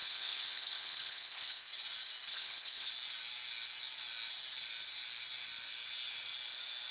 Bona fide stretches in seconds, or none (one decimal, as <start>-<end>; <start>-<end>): 1.7-2.3; 2.9-6.9